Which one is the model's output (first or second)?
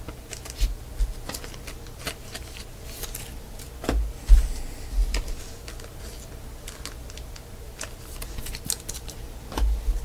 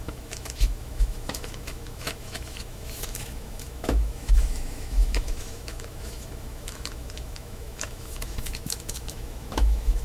second